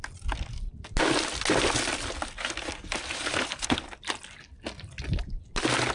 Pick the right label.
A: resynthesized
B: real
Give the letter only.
B